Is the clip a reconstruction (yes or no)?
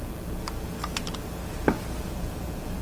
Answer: no